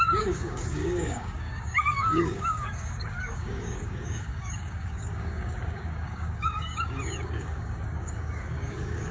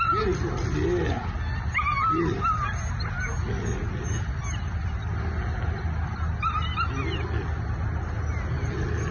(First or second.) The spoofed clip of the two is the first